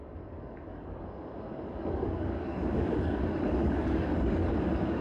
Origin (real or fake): fake